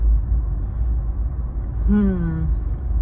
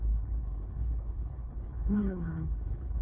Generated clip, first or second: second